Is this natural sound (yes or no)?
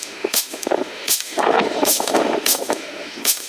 no